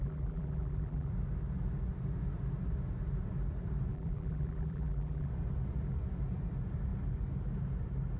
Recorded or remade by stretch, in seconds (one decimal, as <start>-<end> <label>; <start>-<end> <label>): 0.0-1.1 remade; 1.1-3.9 recorded; 3.9-5.3 remade; 5.3-8.2 recorded